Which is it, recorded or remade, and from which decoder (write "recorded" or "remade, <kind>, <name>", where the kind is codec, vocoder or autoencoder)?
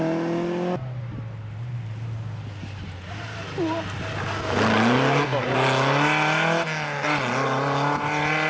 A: recorded